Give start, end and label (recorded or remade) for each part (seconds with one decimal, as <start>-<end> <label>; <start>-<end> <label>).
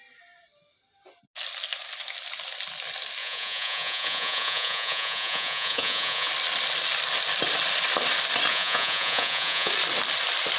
0.0-3.2 recorded; 3.2-6.3 remade; 6.3-8.5 recorded; 8.5-9.7 remade; 9.7-10.6 recorded